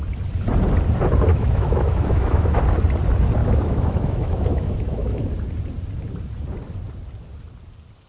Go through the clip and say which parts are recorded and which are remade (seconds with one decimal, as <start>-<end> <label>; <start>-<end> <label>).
0.0-1.3 recorded; 1.3-2.6 remade; 2.6-3.4 recorded; 3.4-5.3 remade; 5.3-8.1 recorded